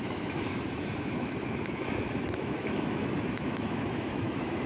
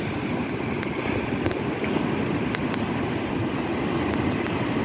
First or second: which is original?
second